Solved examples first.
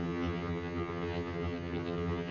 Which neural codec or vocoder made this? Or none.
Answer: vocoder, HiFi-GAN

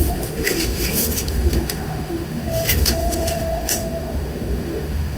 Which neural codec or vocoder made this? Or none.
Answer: autoencoder, DAC-VAE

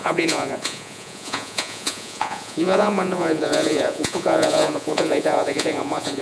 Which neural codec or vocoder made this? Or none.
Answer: vocoder, Vocos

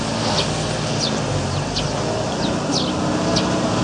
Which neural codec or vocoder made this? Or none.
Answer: none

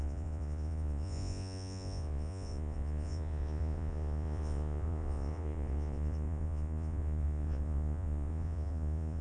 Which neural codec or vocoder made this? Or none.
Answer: vocoder, Vocos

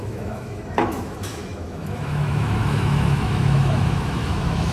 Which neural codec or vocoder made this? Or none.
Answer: autoencoder, DAC-VAE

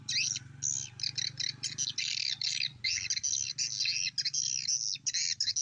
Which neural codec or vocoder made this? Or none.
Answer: none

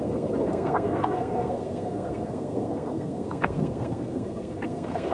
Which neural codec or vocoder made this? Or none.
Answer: codec, SNAC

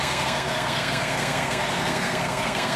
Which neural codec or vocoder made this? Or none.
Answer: codec, SNAC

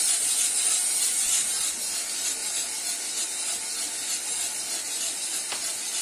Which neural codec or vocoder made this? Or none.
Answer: none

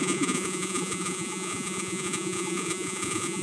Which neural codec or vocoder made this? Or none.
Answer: vocoder, Vocos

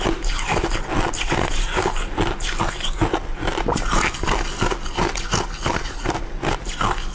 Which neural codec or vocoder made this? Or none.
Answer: none